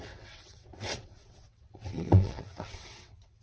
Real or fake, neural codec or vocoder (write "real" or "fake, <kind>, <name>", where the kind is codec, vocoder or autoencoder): fake, vocoder, WaveNeXt